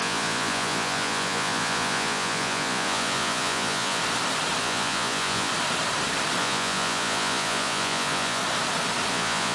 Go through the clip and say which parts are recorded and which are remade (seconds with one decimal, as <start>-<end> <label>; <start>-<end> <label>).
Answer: 0.0-4.0 remade; 4.0-4.6 recorded; 4.6-5.5 remade; 5.5-6.4 recorded; 6.4-8.4 remade; 8.4-9.1 recorded; 9.1-9.5 remade